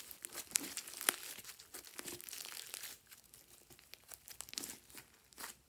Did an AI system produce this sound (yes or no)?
no